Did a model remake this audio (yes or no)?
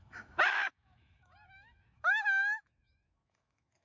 yes